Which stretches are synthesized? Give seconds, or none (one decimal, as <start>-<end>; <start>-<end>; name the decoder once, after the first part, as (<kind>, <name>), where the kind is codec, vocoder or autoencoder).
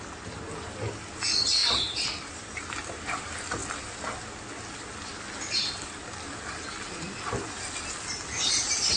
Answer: none